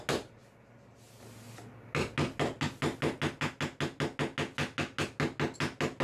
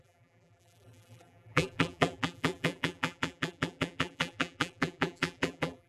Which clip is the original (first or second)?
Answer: first